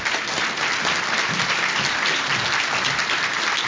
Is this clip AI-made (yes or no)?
no